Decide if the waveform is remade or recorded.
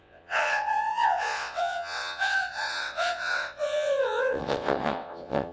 remade